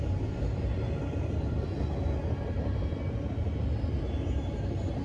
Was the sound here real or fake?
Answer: real